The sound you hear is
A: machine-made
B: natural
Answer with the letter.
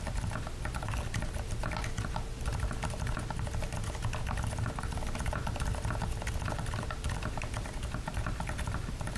B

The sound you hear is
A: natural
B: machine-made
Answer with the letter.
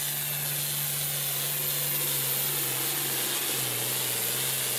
A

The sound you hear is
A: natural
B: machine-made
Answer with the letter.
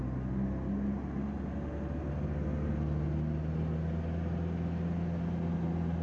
A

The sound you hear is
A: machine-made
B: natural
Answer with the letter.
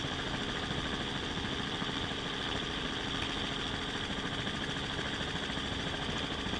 B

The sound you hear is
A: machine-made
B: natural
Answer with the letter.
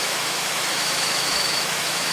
A